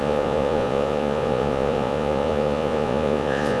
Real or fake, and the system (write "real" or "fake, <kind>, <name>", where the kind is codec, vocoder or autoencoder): fake, vocoder, Vocos